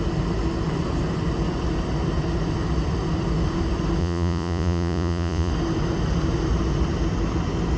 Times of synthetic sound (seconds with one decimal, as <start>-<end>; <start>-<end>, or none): 4.0-5.5